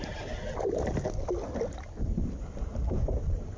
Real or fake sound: real